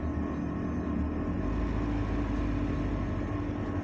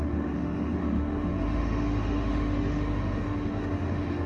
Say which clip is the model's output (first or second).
second